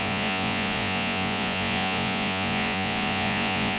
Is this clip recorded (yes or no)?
no